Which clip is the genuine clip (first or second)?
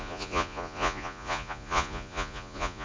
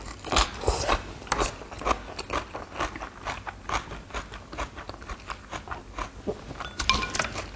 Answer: second